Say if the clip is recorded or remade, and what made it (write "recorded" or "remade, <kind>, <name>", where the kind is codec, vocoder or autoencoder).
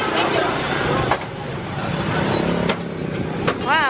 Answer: recorded